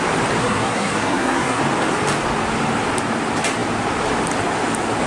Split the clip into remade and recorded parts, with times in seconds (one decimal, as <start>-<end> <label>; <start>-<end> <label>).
0.0-0.4 recorded; 0.4-1.6 remade; 1.6-5.1 recorded